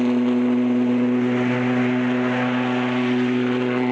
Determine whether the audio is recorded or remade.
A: recorded